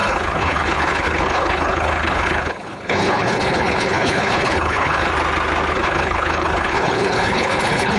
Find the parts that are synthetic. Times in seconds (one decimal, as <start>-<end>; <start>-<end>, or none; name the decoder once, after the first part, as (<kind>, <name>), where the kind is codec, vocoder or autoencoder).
0.0-5.1 (codec, HILCodec); 5.7-8.0